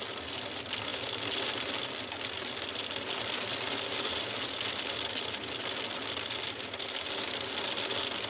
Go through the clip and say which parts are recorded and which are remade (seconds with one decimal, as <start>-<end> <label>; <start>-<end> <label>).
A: 0.0-8.3 recorded